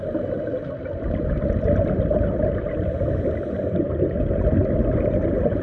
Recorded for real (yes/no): yes